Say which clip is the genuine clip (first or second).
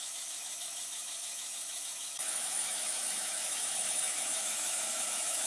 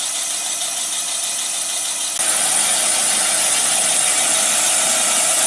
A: second